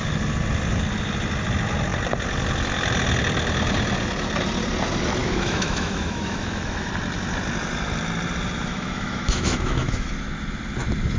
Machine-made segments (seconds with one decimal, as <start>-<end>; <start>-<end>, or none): 5.2-6.9; 8.7-10.1